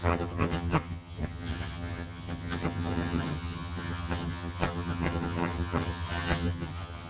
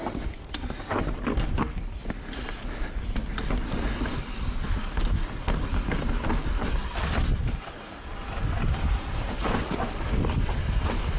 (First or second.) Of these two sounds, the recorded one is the second